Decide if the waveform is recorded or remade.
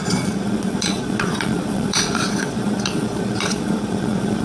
remade